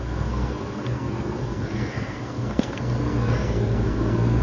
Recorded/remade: remade